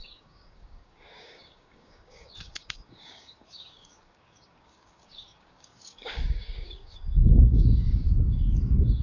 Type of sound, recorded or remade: remade